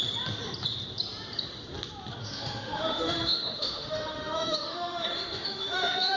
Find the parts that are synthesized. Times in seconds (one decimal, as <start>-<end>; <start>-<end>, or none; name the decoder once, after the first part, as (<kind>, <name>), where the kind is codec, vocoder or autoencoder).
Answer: 2.2-6.2 (autoencoder, DAC-VAE)